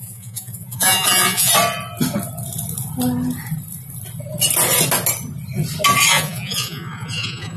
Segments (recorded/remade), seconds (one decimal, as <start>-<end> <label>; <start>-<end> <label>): 0.0-1.5 remade; 1.5-6.1 recorded; 6.1-7.6 remade